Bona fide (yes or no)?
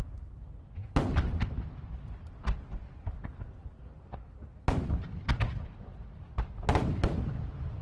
yes